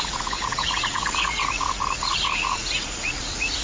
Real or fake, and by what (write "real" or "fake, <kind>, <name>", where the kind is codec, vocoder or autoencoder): fake, vocoder, Vocos